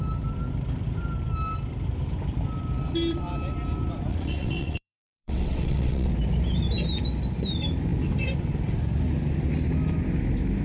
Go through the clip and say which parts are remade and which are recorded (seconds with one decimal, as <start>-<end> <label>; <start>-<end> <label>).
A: 0.0-4.1 recorded; 4.1-6.1 remade; 6.1-10.6 recorded